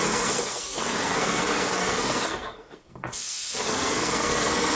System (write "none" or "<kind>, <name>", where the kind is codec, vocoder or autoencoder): codec, SNAC